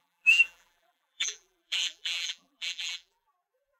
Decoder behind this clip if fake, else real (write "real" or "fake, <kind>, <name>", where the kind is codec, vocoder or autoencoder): fake, vocoder, BigVGAN v2